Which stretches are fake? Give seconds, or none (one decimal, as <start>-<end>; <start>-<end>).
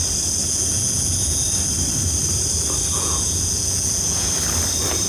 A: 0.4-1.4; 2.9-4.3